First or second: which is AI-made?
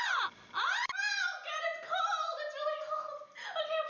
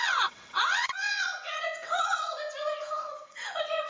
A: second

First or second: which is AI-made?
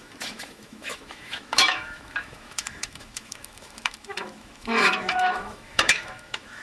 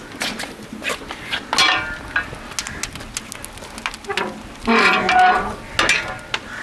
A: first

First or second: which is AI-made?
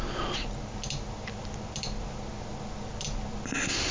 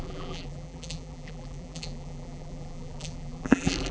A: second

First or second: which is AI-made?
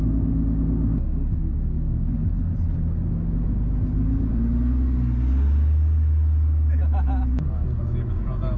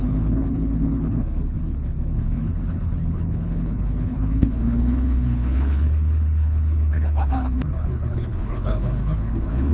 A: second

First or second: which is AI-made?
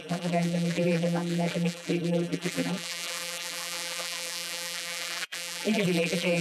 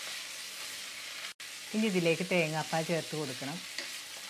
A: first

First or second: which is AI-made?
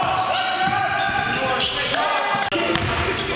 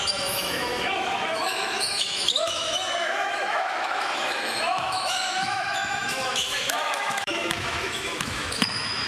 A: second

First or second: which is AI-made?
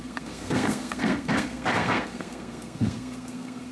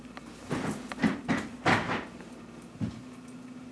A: first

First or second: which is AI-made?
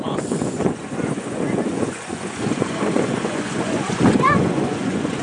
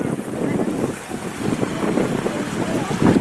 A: first